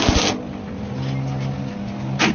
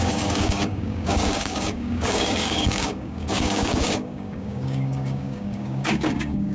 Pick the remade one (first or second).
second